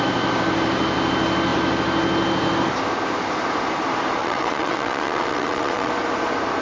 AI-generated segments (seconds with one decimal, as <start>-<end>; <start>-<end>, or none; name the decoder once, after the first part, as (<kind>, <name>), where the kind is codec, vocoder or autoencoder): 4.2-5.9 (vocoder, WaveNeXt)